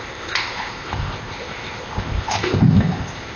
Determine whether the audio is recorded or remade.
remade